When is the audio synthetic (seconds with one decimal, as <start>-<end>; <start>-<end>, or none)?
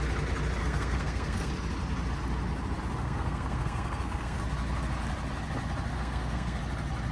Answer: 0.6-1.5; 3.0-4.4; 5.9-6.6